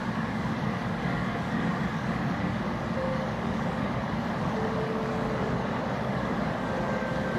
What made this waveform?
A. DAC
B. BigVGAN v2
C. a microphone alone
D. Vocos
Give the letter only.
A